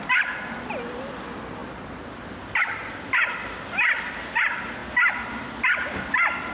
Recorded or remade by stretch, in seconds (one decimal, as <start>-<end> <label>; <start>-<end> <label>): 0.0-1.6 recorded; 1.6-4.3 remade; 4.3-6.5 recorded